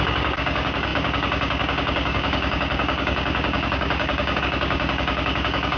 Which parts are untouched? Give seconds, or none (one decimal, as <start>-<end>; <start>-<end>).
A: none